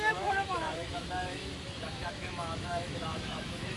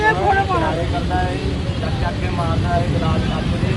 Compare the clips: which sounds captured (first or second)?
second